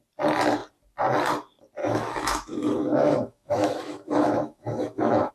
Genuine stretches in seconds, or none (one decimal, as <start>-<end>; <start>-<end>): 0.0-1.8